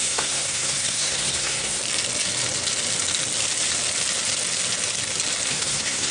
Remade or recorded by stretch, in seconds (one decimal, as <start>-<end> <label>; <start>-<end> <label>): 0.0-1.8 remade; 1.8-5.5 recorded; 5.5-6.1 remade